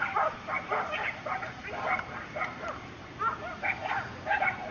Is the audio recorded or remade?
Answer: remade